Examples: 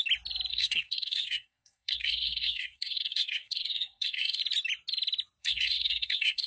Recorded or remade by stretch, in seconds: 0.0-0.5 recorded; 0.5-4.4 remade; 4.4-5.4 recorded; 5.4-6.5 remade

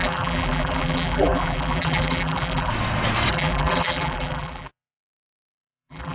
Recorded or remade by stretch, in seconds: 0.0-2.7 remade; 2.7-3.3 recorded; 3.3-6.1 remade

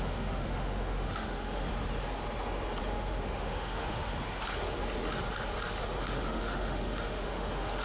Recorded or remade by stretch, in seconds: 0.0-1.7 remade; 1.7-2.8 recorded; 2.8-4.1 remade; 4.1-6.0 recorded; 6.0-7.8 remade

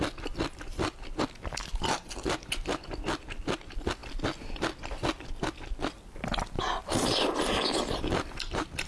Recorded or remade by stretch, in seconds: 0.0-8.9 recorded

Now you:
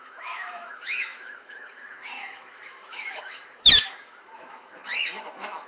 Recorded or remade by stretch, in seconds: 0.0-5.7 remade